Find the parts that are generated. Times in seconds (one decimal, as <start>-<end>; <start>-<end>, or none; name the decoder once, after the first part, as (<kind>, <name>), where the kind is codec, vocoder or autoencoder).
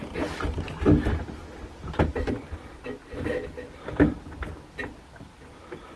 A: none